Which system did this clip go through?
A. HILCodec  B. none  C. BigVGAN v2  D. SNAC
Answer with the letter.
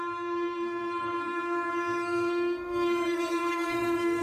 D